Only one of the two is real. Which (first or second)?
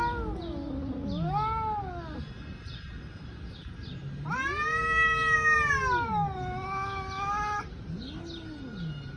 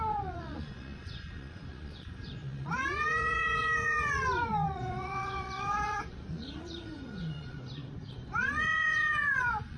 first